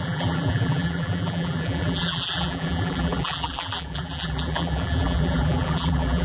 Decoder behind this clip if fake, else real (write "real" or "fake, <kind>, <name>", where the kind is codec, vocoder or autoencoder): fake, vocoder, BigVGAN v2